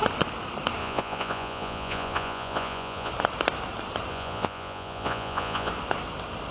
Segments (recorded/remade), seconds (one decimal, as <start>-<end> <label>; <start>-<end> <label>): 0.0-0.8 recorded; 0.8-3.1 remade; 3.1-4.1 recorded; 4.1-5.7 remade; 5.7-6.5 recorded